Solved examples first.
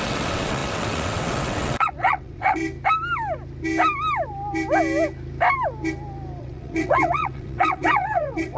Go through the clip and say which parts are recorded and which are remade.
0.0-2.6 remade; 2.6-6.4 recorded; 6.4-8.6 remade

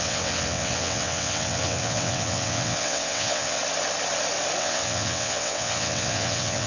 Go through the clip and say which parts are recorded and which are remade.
0.0-3.6 remade; 3.6-4.6 recorded; 4.6-6.7 remade

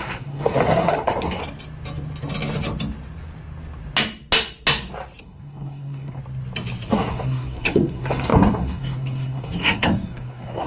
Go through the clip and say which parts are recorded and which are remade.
0.0-1.4 remade; 1.4-5.2 recorded; 5.2-6.2 remade; 6.2-6.9 recorded; 6.9-10.7 remade